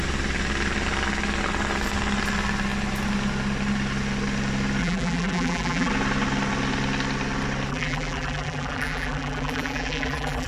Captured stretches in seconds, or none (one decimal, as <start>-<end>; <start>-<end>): 0.0-4.8; 5.9-7.7